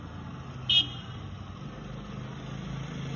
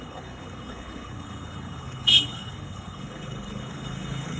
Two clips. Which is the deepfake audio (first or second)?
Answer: second